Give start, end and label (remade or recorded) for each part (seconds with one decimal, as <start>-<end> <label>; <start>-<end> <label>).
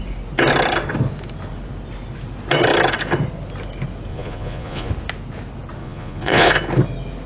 0.0-4.1 recorded; 4.1-4.9 remade; 4.9-5.8 recorded; 5.8-6.5 remade; 6.5-7.3 recorded